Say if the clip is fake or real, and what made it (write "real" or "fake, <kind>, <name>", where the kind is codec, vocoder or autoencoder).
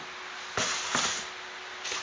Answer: real